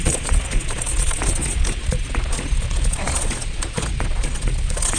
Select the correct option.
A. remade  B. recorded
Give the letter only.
A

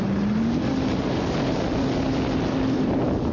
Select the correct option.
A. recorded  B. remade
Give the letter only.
A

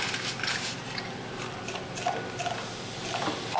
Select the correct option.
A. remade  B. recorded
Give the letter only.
B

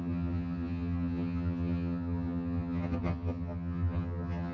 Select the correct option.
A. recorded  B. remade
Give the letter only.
B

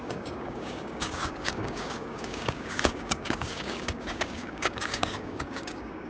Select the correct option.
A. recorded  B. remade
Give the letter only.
B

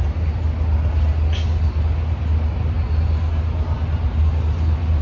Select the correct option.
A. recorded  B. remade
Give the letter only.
A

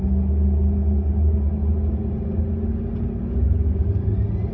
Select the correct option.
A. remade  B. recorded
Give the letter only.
B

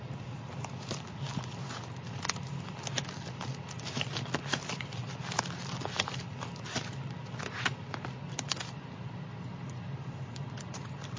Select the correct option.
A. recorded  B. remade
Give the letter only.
A